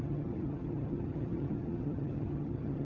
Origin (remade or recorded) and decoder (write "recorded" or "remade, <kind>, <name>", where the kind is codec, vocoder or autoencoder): remade, vocoder, HiFi-GAN